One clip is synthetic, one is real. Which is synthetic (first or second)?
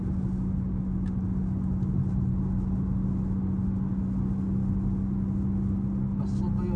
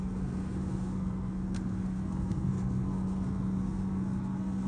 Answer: second